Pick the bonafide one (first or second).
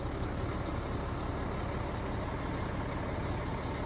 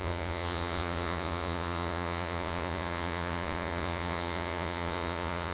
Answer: first